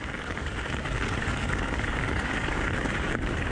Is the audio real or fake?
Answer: fake